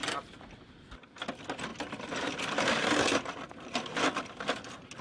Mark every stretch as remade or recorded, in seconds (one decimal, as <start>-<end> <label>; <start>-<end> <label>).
0.0-5.0 recorded